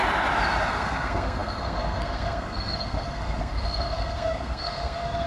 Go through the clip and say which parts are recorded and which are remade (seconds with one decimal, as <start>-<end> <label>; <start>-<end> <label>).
0.0-0.7 recorded; 0.7-5.3 remade